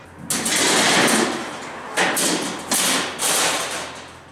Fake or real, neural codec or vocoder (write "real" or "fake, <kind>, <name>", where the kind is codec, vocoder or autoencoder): real